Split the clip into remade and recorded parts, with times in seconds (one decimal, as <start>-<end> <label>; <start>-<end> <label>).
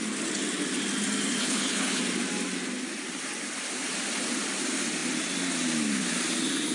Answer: 0.0-1.4 recorded; 1.4-2.0 remade; 2.0-6.7 recorded